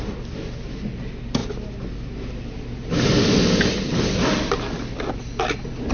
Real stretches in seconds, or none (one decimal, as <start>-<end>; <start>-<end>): 0.0-5.9